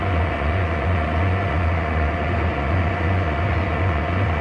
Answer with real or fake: fake